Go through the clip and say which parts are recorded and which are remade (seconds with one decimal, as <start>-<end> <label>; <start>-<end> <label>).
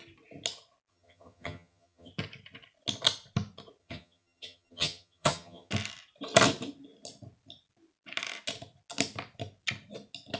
0.0-0.9 recorded; 0.9-2.1 remade; 2.1-3.8 recorded; 3.8-5.7 remade; 5.7-10.4 recorded